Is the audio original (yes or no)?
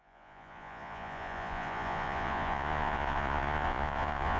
no